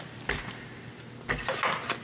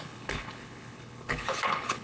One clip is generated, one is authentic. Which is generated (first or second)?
second